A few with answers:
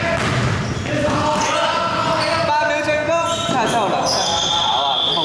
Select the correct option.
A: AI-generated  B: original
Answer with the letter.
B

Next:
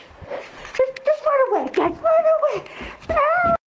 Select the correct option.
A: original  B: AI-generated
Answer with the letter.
A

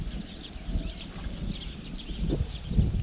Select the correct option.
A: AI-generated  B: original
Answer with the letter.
B